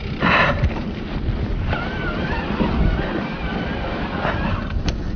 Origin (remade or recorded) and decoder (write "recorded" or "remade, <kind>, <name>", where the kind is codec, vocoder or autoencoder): recorded